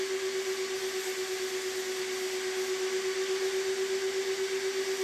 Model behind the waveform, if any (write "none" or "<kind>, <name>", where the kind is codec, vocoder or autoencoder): none